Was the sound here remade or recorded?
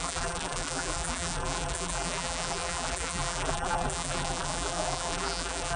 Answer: remade